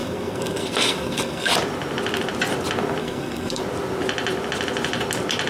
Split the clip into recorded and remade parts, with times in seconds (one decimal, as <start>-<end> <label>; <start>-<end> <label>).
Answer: 0.0-1.5 remade; 1.5-3.0 recorded; 3.0-3.6 remade; 3.6-5.5 recorded